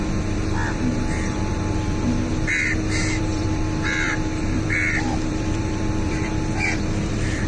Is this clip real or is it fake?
fake